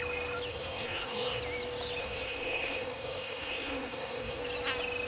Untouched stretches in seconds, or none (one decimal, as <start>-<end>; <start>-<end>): 0.0-0.5; 1.4-2.0; 4.4-5.1